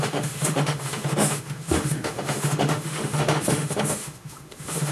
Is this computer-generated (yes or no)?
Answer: yes